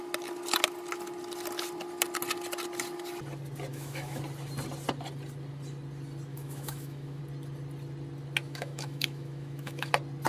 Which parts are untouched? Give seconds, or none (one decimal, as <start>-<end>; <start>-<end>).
0.0-3.7; 4.2-6.3; 7.2-8.4; 9.9-10.3